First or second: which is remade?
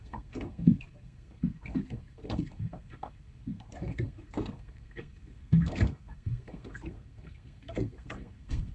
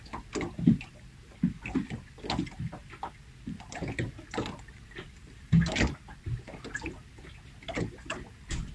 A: first